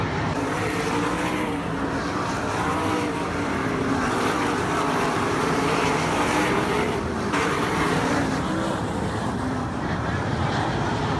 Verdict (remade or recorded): remade